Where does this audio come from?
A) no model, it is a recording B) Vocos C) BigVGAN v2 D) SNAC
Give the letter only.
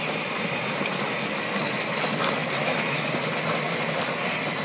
A